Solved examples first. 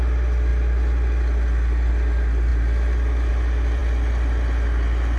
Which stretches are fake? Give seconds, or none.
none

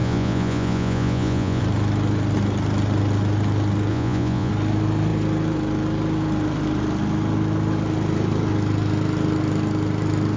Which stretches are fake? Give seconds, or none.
0.0-1.6 (vocoder, Vocos); 3.9-4.5